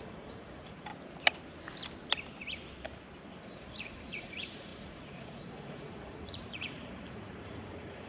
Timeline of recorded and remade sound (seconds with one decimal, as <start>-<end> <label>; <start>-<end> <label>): 0.0-0.9 remade; 0.9-3.4 recorded; 3.4-8.1 remade